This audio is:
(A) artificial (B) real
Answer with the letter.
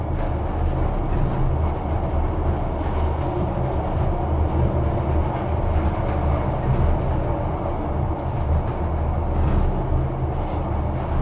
B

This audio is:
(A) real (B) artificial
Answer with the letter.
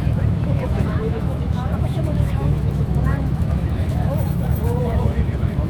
B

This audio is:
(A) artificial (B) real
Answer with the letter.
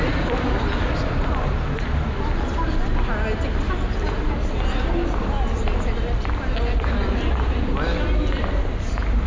B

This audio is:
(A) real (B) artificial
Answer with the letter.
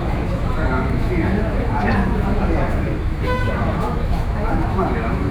B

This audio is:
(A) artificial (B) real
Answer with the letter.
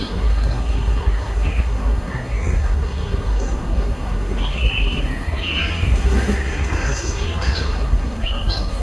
A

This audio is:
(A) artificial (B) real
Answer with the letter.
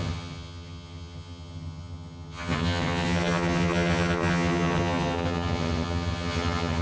A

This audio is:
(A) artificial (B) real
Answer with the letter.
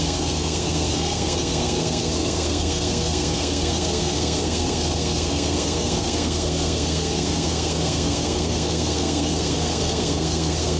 A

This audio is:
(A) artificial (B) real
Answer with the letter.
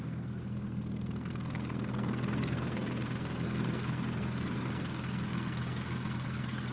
A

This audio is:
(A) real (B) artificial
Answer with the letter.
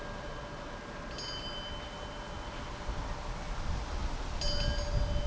A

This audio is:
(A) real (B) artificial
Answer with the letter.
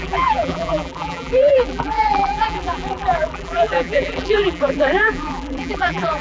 B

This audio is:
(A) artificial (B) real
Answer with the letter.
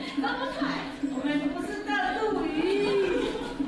B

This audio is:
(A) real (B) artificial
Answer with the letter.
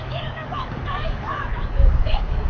B